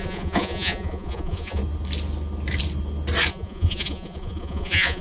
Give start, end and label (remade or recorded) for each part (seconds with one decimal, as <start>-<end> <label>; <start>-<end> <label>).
0.0-1.6 remade; 1.6-3.3 recorded; 3.3-5.0 remade